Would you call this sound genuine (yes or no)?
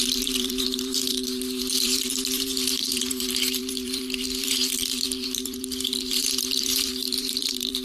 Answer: no